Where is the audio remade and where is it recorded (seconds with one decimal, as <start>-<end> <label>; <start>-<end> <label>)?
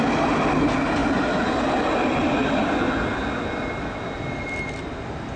0.0-5.4 recorded